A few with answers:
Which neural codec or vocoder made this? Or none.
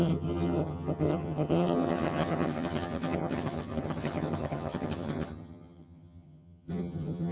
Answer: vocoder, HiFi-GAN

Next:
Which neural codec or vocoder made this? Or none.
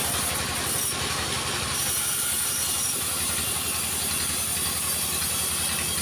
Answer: none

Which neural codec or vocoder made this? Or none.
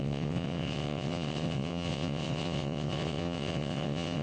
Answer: vocoder, WaveNeXt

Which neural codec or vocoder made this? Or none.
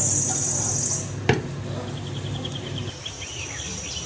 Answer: none